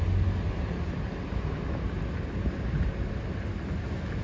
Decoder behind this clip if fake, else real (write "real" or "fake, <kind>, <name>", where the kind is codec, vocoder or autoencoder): real